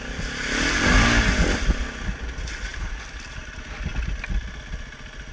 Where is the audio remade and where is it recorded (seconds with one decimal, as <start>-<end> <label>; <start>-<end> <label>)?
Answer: 0.0-5.3 recorded